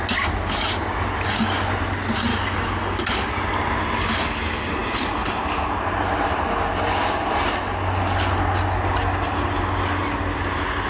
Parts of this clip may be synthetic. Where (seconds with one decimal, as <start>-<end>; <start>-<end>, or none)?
2.3-3.3